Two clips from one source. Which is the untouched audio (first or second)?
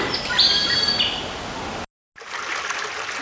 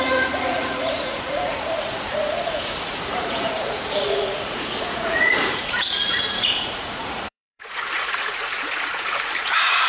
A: first